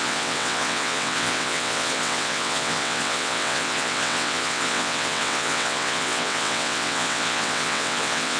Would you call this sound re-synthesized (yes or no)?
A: yes